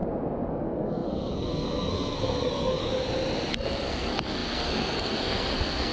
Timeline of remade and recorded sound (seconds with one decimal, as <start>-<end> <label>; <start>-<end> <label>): 0.0-0.5 recorded; 0.5-2.8 remade; 2.8-3.5 recorded; 3.5-5.9 remade